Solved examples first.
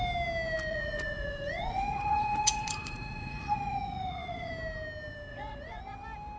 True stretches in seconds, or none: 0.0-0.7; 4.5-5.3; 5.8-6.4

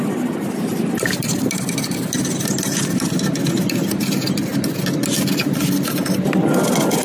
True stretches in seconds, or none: 0.0-7.0

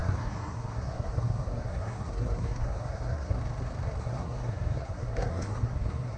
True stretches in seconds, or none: 3.4-4.0

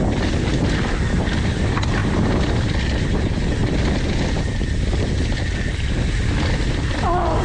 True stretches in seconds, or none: 0.0-7.4

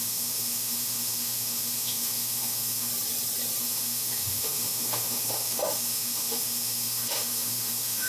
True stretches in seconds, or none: 2.9-3.6

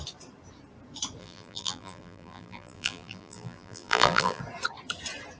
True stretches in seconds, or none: 0.0-1.2; 4.4-5.4